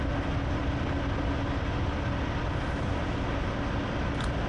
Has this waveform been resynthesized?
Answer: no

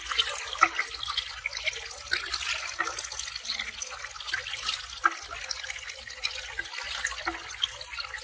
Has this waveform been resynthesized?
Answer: no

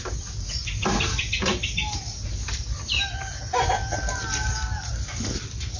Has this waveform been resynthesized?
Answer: no